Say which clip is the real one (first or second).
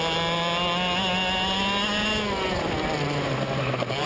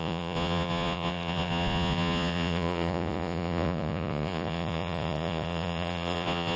first